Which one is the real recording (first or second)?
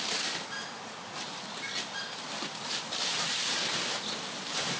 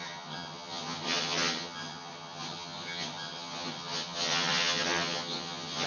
first